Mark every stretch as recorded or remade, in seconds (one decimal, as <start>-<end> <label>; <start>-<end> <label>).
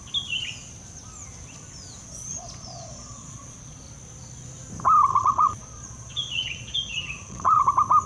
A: 0.0-2.0 recorded; 2.0-3.8 remade; 3.8-5.1 recorded; 5.1-7.6 remade; 7.6-8.1 recorded